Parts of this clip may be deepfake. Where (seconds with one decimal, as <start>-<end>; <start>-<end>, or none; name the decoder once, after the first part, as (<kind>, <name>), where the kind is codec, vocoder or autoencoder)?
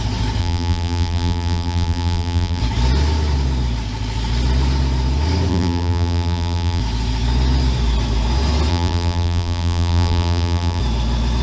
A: 0.4-2.6 (vocoder, BigVGAN v2); 5.5-6.8; 8.7-10.8